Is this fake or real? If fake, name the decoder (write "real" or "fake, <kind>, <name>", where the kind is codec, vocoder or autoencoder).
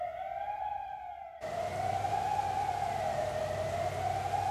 real